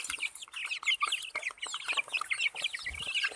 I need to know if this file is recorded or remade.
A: recorded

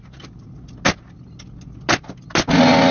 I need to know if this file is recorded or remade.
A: recorded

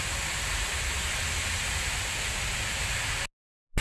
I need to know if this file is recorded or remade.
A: recorded